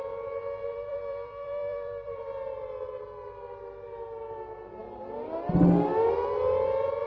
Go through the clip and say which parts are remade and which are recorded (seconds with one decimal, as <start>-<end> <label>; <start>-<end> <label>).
0.0-0.6 recorded; 0.6-2.2 remade; 2.2-7.1 recorded